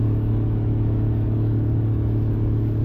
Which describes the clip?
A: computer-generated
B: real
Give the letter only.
A